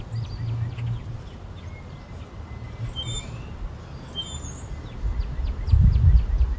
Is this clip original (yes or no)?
yes